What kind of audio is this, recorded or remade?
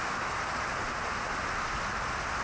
recorded